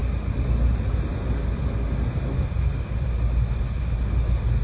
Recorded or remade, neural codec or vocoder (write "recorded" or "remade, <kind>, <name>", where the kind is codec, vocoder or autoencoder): recorded